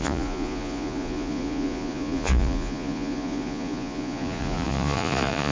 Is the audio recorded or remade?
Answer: remade